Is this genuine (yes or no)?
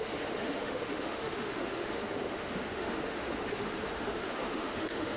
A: no